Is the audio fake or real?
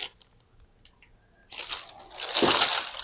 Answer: real